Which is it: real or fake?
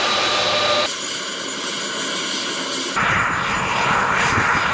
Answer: real